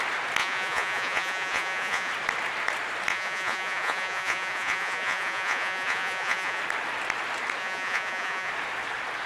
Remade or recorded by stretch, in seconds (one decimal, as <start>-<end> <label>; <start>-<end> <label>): 0.0-0.4 recorded; 0.4-2.1 remade; 2.1-3.1 recorded; 3.1-6.6 remade; 6.6-7.6 recorded; 7.6-8.5 remade; 8.5-9.3 recorded

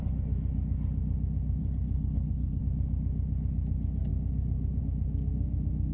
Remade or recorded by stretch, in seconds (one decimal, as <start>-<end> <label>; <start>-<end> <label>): 0.0-1.6 recorded; 1.6-2.6 remade; 2.6-5.9 recorded

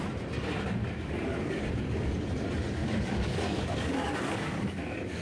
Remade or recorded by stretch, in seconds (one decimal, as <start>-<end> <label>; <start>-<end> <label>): 0.0-0.8 recorded; 0.8-1.6 remade; 1.6-2.8 recorded; 2.8-5.2 remade